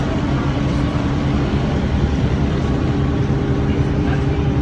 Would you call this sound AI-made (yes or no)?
yes